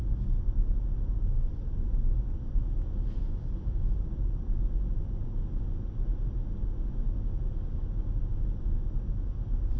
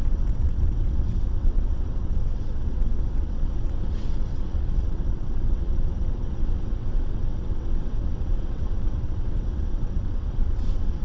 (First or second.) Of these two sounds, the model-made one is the second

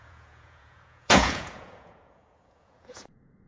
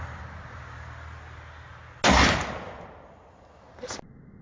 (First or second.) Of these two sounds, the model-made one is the first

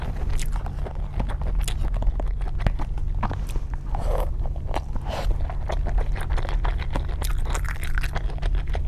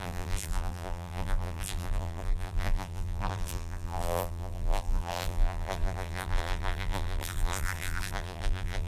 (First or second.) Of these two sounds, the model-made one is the second